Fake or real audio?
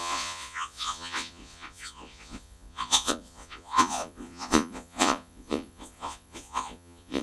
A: fake